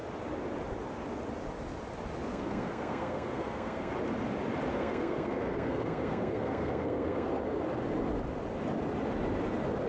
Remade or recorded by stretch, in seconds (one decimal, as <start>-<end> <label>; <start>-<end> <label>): 0.0-2.3 recorded; 2.3-3.9 remade; 3.9-4.7 recorded; 4.7-7.3 remade; 7.3-9.9 recorded